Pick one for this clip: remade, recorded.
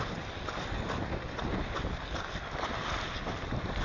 recorded